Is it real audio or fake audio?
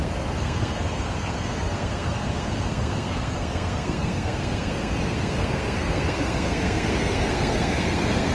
fake